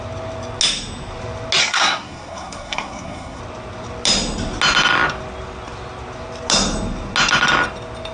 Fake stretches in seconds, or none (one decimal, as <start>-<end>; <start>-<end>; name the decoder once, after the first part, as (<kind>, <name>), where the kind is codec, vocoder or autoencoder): 1.6-3.4 (codec, SNAC)